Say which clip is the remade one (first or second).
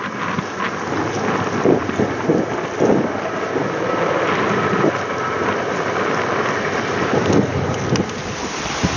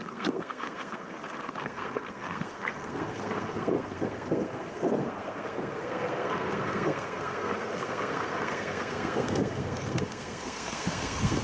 second